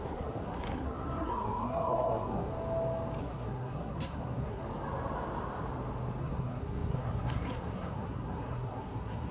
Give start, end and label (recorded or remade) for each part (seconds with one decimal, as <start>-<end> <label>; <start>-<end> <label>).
0.0-2.5 remade; 2.5-3.2 recorded; 3.2-4.6 remade; 4.6-6.2 recorded; 6.2-9.3 remade